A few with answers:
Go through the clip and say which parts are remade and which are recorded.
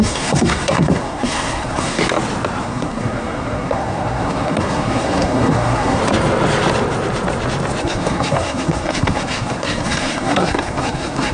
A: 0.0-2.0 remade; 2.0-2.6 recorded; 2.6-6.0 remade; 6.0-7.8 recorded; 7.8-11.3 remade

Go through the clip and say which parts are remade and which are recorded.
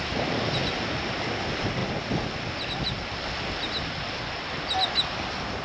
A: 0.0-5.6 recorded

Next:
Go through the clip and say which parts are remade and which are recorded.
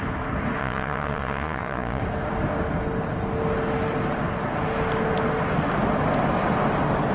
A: 0.0-0.6 recorded; 0.6-2.0 remade; 2.0-7.1 recorded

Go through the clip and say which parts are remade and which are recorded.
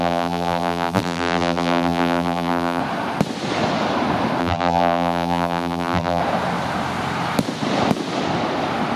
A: 0.0-2.8 remade; 2.8-4.4 recorded; 4.4-6.2 remade; 6.2-9.0 recorded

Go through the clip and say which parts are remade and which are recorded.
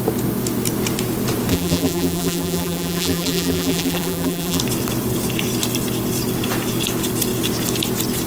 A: 0.0-1.5 recorded; 1.5-4.6 remade; 4.6-8.3 recorded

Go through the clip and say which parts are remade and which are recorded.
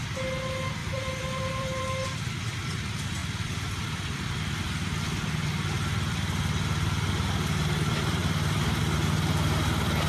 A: 0.0-0.8 recorded; 0.8-1.8 remade; 1.8-3.2 recorded; 3.2-4.6 remade; 4.6-8.2 recorded; 8.2-8.8 remade; 8.8-10.1 recorded